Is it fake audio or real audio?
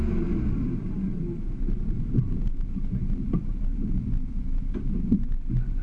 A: real